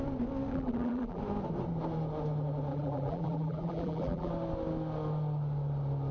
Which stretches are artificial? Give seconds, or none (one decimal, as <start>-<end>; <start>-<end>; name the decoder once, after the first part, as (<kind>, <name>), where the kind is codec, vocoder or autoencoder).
0.5-1.2 (vocoder, BigVGAN v2); 2.7-4.3